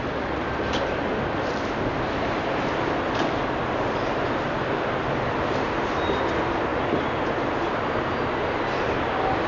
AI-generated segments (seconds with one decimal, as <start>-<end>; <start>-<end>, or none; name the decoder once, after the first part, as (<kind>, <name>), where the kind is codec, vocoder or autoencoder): none

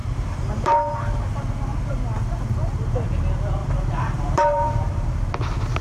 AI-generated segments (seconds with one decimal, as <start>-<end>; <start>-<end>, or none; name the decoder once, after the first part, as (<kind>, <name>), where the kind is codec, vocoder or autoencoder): 0.0-1.0 (vocoder, BigVGAN v2); 3.6-5.2

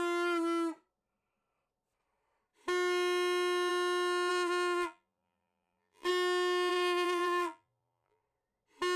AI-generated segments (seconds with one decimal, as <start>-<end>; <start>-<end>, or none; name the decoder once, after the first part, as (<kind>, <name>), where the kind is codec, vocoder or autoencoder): 4.3-6.1 (vocoder, BigVGAN v2); 6.7-8.2

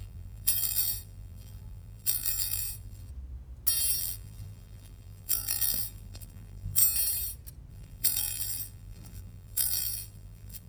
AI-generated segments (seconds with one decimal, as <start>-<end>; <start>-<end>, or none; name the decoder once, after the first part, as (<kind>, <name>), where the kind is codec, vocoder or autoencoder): 0.0-3.1 (vocoder, BigVGAN v2); 4.0-6.8; 7.7-10.7

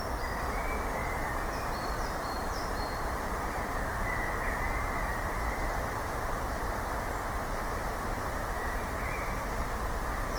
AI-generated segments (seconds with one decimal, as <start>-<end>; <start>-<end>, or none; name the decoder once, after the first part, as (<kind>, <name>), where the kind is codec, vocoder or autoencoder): 1.0-4.5 (vocoder, BigVGAN v2); 5.1-6.8; 7.8-8.4

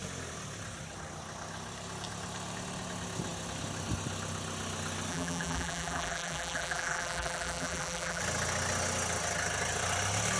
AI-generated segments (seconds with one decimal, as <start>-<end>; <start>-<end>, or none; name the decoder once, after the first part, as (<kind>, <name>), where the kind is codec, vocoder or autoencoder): 5.1-8.2 (vocoder, BigVGAN v2)